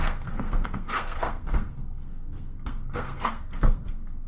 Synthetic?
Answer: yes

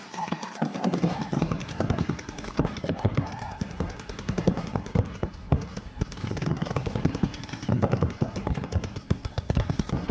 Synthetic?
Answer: yes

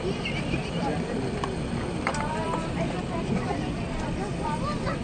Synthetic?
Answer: no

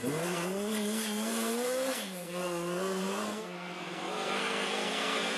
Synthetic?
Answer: yes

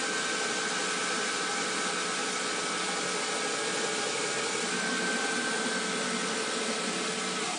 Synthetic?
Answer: no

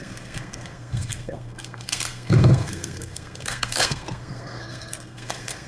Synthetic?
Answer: yes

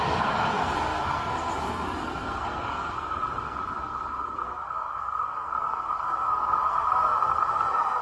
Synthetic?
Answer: yes